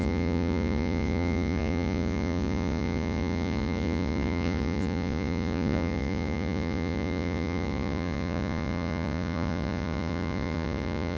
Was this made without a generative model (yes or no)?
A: no